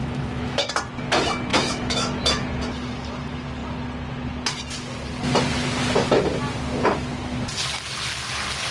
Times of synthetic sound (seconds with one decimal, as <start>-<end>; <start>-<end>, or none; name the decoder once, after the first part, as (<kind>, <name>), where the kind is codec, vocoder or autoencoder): 0.0-0.7 (autoencoder, DAC-VAE); 1.5-2.5